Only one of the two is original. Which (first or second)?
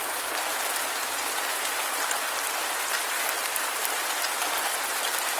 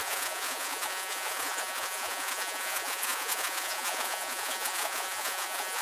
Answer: first